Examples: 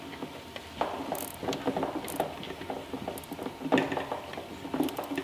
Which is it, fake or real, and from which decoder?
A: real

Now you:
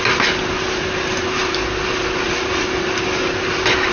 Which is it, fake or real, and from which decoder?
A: real